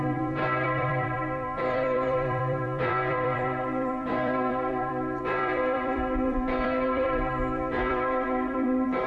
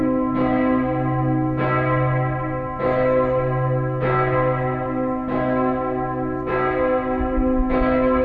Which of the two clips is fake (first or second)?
first